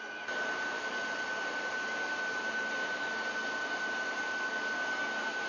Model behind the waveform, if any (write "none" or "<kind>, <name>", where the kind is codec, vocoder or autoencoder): none